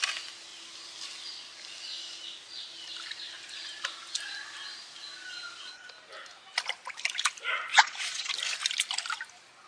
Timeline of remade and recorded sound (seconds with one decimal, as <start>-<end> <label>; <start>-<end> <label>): 0.0-7.7 recorded; 7.7-8.3 remade; 8.3-9.7 recorded